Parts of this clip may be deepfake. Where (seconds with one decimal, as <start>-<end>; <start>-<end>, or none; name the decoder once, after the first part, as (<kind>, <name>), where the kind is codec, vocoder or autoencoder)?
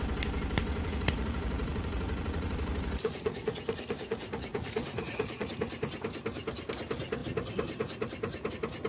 0.7-5.5 (vocoder, Vocos)